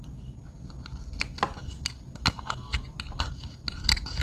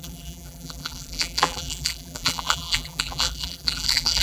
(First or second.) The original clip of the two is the first